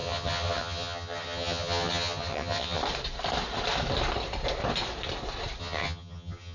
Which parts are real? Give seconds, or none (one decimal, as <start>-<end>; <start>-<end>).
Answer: 2.8-5.6